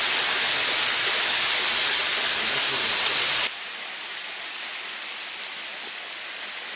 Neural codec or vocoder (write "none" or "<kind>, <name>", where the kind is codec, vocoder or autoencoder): none